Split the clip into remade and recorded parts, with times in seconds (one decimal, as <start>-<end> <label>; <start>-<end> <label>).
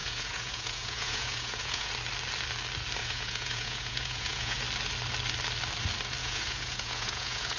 0.0-1.9 remade; 1.9-3.0 recorded; 3.0-4.6 remade; 4.6-6.2 recorded; 6.2-7.6 remade